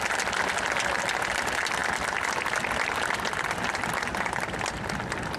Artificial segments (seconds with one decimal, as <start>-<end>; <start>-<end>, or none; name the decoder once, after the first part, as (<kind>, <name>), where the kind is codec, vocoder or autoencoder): none